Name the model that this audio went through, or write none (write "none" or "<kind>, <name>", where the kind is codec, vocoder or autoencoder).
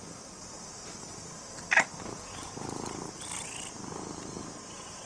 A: none